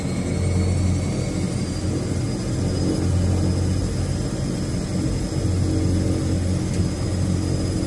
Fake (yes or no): no